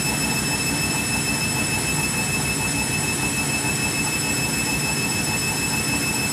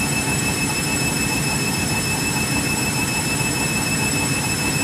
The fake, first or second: second